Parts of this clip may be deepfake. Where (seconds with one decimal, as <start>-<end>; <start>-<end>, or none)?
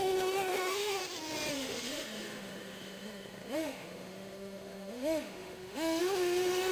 0.0-1.0; 1.5-6.7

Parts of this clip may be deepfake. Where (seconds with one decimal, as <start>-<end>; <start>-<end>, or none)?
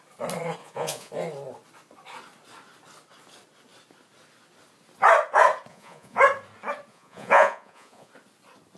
0.6-1.1; 5.7-6.2; 6.9-8.1